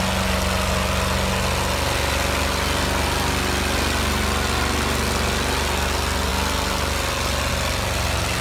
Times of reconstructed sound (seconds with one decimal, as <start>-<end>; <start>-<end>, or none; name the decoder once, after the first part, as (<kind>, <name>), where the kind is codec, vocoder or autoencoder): none